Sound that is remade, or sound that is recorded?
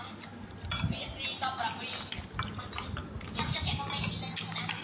recorded